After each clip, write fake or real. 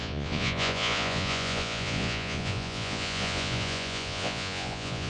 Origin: fake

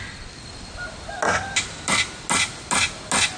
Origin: real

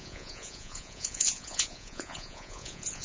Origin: fake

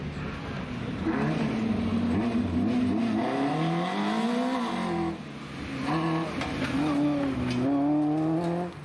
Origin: real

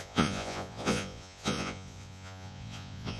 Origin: fake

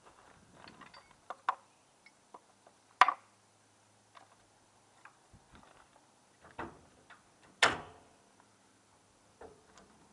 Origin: real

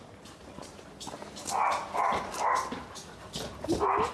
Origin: real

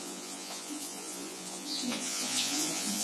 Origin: fake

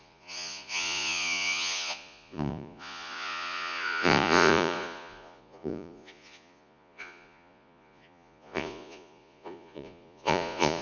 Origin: fake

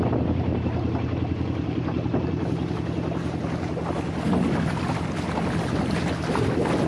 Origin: real